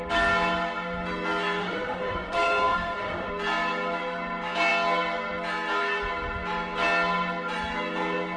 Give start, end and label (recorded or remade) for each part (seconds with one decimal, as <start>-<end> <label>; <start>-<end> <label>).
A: 0.0-1.6 recorded; 1.6-3.3 remade; 3.3-8.4 recorded